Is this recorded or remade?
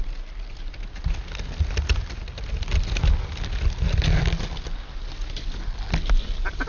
recorded